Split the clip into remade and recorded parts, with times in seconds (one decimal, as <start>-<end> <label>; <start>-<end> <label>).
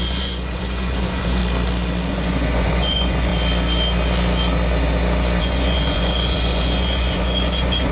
0.0-1.4 remade; 1.4-2.1 recorded; 2.1-3.3 remade; 3.3-5.4 recorded; 5.4-7.9 remade